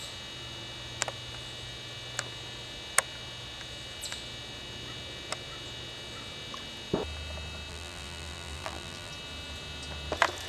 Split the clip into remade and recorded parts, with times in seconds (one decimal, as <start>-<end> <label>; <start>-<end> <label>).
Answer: 0.0-7.7 recorded; 7.7-9.1 remade; 9.1-10.5 recorded